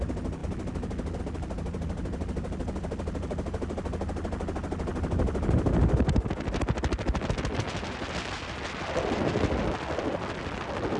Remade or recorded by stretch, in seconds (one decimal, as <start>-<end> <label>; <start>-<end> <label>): 0.0-11.0 recorded